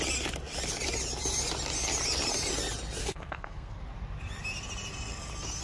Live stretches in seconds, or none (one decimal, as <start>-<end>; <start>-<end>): 0.0-3.0; 3.8-5.6

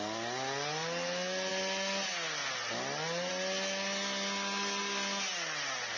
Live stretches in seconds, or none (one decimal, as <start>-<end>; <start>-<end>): 0.0-6.0

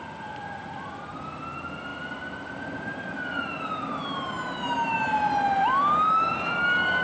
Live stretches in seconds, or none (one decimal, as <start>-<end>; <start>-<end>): 0.0-7.0

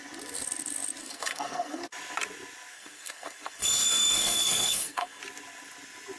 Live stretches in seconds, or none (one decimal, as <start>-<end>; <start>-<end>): 0.0-1.0; 1.8-2.7; 5.2-6.2